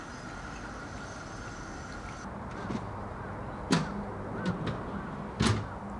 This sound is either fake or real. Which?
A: real